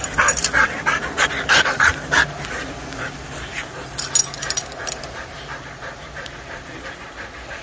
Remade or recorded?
recorded